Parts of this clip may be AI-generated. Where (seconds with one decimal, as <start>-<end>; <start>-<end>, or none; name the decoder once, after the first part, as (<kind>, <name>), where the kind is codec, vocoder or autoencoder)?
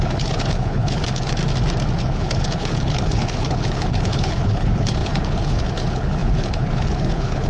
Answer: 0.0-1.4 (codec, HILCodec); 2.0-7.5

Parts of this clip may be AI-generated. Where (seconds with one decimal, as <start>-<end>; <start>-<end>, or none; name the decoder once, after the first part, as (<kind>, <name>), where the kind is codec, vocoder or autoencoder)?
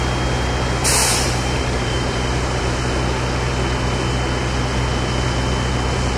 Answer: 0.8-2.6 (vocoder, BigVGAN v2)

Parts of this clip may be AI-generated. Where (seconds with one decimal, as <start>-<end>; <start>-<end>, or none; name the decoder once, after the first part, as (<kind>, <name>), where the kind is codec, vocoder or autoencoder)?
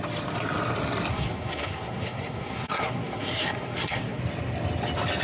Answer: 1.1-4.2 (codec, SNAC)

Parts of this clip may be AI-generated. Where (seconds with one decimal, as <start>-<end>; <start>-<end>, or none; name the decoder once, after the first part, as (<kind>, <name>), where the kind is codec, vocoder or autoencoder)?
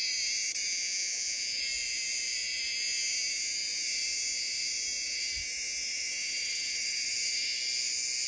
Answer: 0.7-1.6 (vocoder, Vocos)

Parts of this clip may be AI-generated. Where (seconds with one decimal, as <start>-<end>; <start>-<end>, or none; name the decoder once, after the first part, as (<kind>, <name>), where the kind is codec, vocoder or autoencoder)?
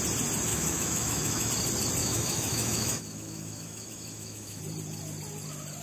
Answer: 0.5-1.5 (autoencoder, DAC-VAE); 2.0-4.6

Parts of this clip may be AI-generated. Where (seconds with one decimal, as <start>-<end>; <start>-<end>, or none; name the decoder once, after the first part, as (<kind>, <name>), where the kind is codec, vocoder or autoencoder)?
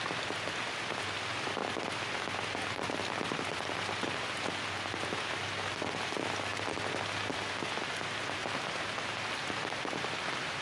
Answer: none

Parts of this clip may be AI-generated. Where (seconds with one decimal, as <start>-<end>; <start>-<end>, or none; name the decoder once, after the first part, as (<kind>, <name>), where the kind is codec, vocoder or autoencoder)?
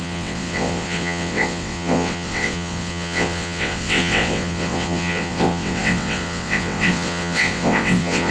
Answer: 0.0-8.3 (vocoder, WaveNeXt)